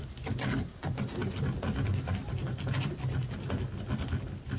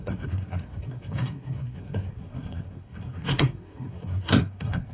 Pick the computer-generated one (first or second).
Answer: second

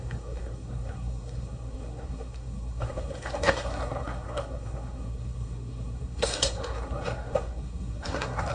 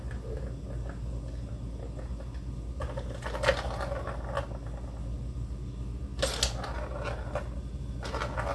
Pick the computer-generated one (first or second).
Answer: first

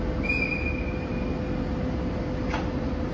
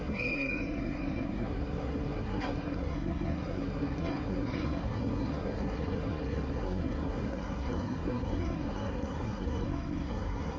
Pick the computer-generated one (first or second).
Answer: second